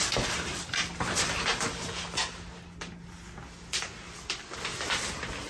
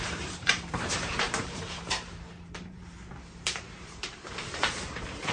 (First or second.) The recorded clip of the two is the first